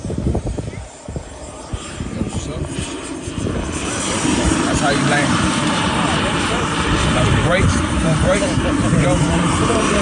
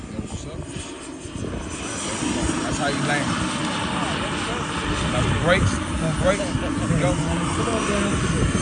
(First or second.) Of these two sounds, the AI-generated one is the first